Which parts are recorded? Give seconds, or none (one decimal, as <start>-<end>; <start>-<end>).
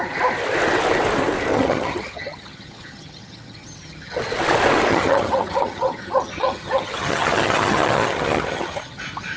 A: 0.0-1.5; 4.2-4.9; 9.0-9.4